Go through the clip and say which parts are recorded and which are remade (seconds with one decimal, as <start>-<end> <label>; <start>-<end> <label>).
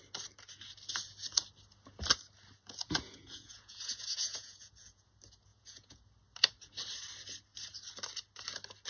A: 0.0-2.8 recorded; 2.8-5.1 remade; 5.1-5.5 recorded; 5.5-6.0 remade; 6.0-8.9 recorded